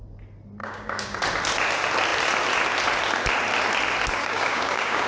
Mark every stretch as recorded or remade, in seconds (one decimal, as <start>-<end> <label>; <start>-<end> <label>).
0.0-0.6 recorded; 0.6-1.2 remade; 1.2-4.2 recorded; 4.2-5.1 remade